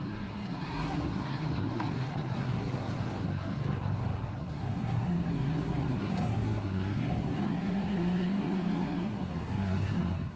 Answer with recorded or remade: remade